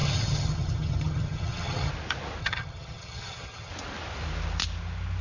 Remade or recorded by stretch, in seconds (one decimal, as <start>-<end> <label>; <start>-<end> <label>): 0.0-1.9 remade; 1.9-2.4 recorded; 2.4-3.7 remade; 3.7-5.2 recorded